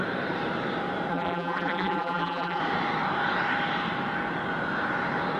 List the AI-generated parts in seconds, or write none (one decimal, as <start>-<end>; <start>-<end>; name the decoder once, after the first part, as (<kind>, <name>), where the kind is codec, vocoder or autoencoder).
1.1-2.6 (vocoder, BigVGAN v2)